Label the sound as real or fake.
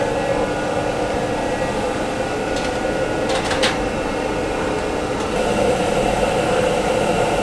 real